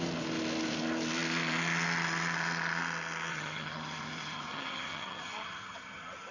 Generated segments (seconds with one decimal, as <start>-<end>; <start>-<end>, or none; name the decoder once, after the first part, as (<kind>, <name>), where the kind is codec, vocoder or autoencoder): 3.3-6.3 (vocoder, HiFi-GAN)